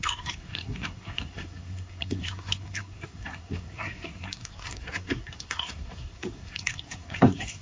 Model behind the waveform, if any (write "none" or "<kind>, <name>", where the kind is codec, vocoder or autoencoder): codec, SNAC